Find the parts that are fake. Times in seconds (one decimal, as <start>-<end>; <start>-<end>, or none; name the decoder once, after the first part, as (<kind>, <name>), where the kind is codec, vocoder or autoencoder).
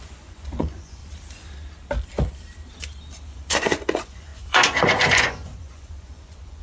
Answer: 0.0-1.0 (vocoder, Vocos); 3.3-6.6